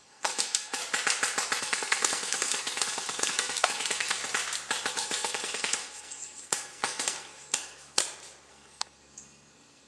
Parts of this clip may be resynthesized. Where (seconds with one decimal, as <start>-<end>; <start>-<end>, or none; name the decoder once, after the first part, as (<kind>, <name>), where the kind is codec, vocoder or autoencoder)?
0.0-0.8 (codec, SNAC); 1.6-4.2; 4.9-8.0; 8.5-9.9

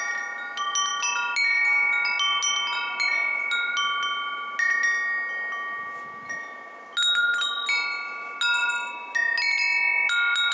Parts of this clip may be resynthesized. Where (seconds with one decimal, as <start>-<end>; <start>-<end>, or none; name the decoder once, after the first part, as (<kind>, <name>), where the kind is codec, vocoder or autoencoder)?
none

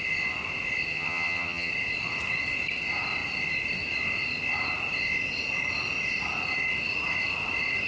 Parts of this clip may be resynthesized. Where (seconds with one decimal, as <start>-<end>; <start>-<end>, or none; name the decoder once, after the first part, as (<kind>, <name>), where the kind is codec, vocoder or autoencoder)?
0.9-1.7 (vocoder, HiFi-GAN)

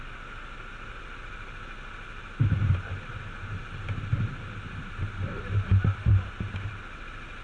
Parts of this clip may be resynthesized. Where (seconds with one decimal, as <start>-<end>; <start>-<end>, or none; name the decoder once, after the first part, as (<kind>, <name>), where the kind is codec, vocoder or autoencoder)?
none

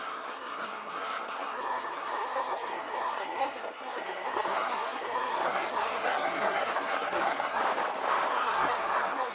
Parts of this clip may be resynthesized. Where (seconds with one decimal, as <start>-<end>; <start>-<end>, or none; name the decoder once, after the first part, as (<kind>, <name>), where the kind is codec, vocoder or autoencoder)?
0.0-7.6 (codec, SNAC); 8.3-9.3

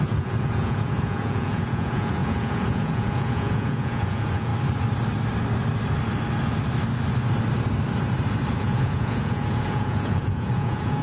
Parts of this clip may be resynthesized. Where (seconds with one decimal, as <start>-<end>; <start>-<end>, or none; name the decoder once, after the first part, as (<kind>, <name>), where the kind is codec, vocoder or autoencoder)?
0.0-4.5 (vocoder, Vocos); 8.6-11.0

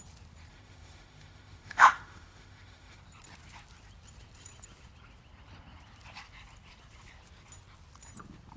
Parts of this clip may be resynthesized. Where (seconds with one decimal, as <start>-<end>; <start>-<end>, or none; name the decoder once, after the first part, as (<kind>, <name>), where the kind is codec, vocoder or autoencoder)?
0.5-3.0 (autoencoder, DAC-VAE)

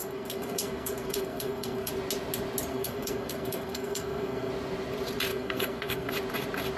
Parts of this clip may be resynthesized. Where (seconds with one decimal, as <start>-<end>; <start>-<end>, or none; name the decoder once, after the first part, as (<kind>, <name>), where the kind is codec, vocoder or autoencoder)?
0.0-1.9 (codec, SNAC); 2.7-4.5; 5.3-6.1